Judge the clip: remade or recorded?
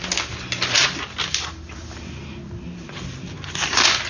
recorded